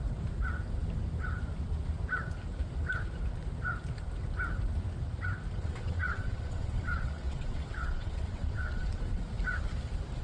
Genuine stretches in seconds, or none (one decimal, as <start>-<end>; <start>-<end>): 0.0-5.6; 9.2-10.2